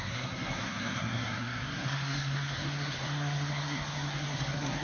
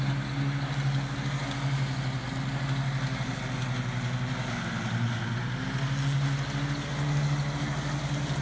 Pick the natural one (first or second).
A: second